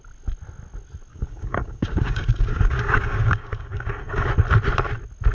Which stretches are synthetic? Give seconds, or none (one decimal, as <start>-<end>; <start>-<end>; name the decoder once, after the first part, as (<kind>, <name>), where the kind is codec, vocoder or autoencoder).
1.1-4.3 (codec, DAC)